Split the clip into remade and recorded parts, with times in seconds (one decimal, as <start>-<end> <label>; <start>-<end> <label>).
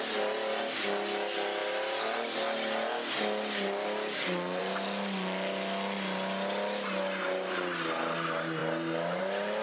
0.0-9.6 recorded